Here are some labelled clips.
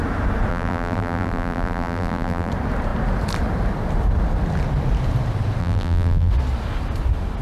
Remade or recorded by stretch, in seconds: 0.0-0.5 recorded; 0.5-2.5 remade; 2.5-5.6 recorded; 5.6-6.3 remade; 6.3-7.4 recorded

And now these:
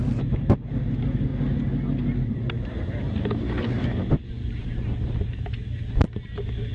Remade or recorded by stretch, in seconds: 0.0-6.7 recorded

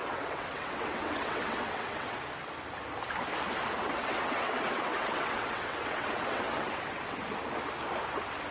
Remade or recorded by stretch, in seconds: 0.0-2.2 remade; 2.2-3.8 recorded; 3.8-7.2 remade; 7.2-8.5 recorded

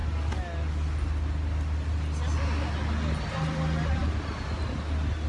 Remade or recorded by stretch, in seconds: 0.0-5.3 recorded